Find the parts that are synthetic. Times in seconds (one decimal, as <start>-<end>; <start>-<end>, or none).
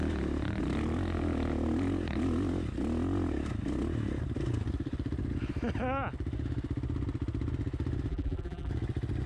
8.1-8.7